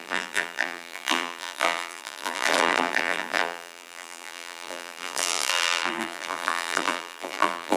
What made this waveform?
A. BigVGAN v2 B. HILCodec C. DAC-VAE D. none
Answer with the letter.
A